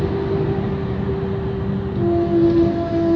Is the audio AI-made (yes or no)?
no